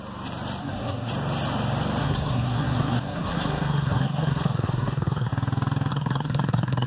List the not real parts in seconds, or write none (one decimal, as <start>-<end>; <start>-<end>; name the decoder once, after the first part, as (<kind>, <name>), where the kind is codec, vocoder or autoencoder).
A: 0.6-1.1 (codec, SNAC); 2.0-5.3; 5.9-6.9